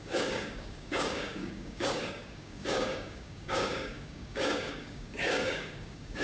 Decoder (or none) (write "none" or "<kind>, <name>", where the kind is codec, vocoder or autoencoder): codec, DAC